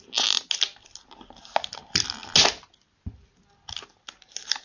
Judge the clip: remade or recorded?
recorded